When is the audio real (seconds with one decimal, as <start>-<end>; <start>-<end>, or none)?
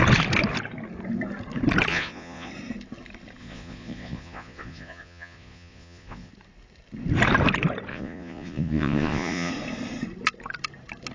0.0-1.9; 2.5-3.4; 6.3-7.9; 9.5-11.1